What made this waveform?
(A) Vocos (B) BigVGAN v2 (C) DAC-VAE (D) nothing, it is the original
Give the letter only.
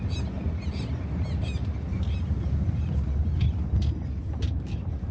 D